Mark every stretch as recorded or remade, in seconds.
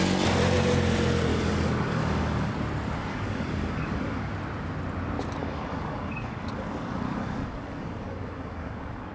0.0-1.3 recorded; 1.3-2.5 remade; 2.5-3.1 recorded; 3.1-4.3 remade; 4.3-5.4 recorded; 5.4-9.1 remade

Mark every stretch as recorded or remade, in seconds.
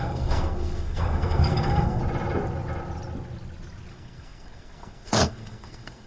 0.0-2.0 remade; 2.0-3.9 recorded; 3.9-6.1 remade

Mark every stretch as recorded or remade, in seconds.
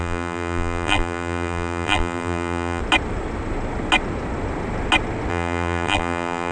0.0-2.8 remade; 2.8-5.3 recorded; 5.3-6.5 remade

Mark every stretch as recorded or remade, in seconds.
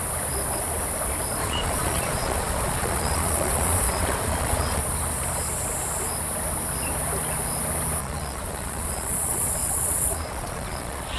0.0-1.4 recorded; 1.4-4.8 remade; 4.8-8.0 recorded; 8.0-11.2 remade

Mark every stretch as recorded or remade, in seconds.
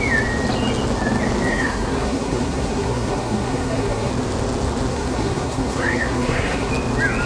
0.0-1.5 recorded; 1.5-4.1 remade; 4.1-4.9 recorded; 4.9-6.7 remade; 6.7-7.3 recorded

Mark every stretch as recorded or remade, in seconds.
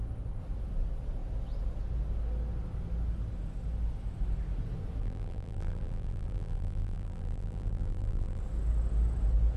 0.0-5.0 recorded; 5.0-8.4 remade; 8.4-9.6 recorded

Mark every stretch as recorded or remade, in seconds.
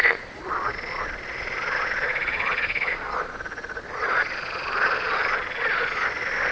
0.0-6.5 remade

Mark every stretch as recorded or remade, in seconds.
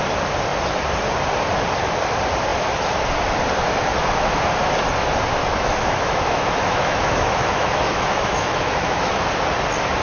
0.0-5.4 recorded; 5.4-9.3 remade; 9.3-10.0 recorded